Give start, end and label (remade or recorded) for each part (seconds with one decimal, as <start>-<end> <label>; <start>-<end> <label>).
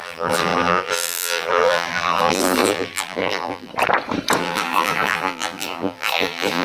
0.0-3.7 remade; 3.7-4.4 recorded; 4.4-6.6 remade